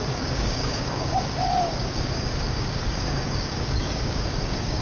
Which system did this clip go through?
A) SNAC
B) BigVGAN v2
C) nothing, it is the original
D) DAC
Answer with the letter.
D